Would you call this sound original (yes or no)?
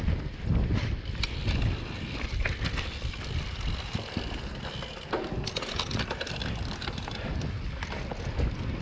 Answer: yes